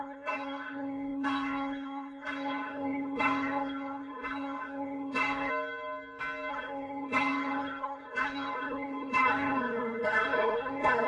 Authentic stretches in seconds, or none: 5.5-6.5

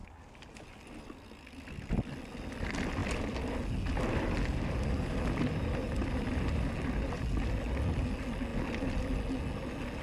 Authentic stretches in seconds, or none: 0.0-10.0